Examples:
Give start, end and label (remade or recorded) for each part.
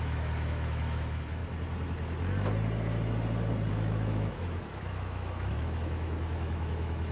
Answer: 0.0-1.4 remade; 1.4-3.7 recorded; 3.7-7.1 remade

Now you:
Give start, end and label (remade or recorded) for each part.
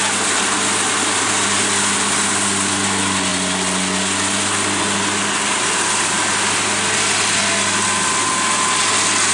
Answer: 0.0-9.3 recorded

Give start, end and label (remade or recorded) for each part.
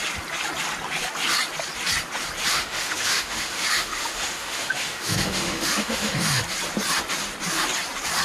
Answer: 0.0-2.5 recorded; 2.5-6.4 remade; 6.4-8.2 recorded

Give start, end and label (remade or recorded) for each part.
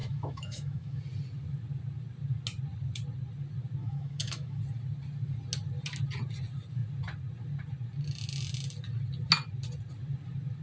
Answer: 0.0-1.0 remade; 1.0-3.8 recorded; 3.8-4.6 remade; 4.6-10.6 recorded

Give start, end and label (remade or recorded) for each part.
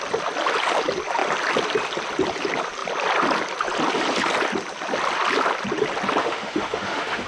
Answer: 0.0-6.2 recorded; 6.2-7.3 remade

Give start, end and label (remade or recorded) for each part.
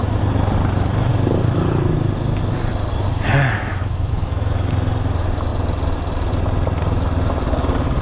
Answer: 0.0-3.7 recorded; 3.7-4.7 remade; 4.7-8.0 recorded